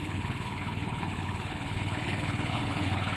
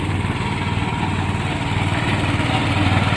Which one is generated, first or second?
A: first